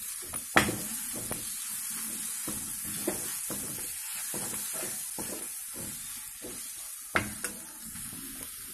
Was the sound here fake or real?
real